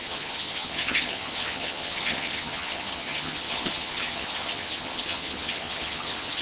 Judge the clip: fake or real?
fake